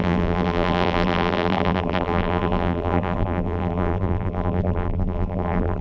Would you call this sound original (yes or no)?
no